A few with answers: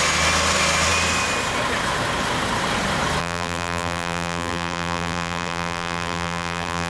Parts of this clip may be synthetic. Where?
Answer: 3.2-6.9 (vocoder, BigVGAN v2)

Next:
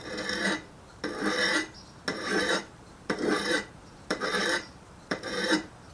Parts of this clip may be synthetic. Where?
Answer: 2.1-5.9 (vocoder, BigVGAN v2)

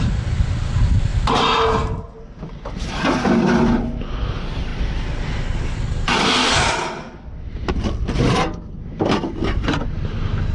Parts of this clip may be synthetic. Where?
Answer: none

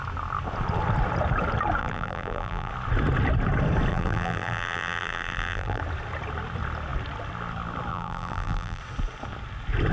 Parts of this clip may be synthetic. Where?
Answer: 1.8-2.7 (vocoder, BigVGAN v2); 3.9-5.8; 7.9-8.8

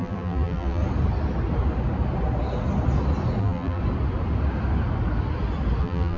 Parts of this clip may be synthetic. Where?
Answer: 0.0-0.8 (vocoder, BigVGAN v2); 3.4-3.8; 5.8-6.2

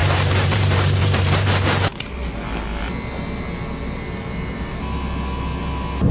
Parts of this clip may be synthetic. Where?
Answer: 0.0-1.5 (vocoder, BigVGAN v2)

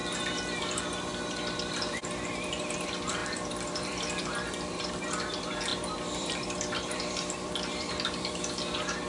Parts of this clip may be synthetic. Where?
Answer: 0.0-9.1 (vocoder, BigVGAN v2)

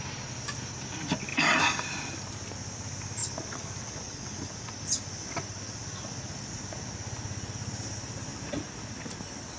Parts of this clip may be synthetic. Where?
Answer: 1.3-1.8 (vocoder, BigVGAN v2); 3.2-6.6; 8.3-9.1